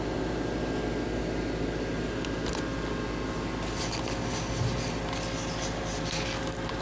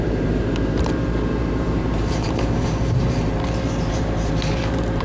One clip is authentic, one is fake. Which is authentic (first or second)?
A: first